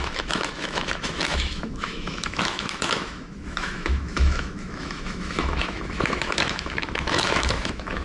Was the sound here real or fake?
fake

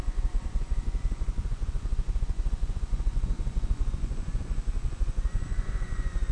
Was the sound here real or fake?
fake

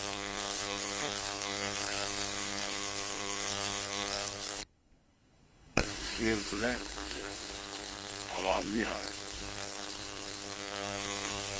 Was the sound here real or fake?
fake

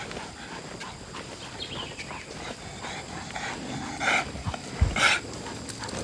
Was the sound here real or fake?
real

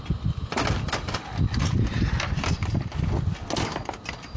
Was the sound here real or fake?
real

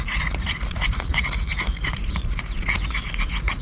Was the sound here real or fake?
fake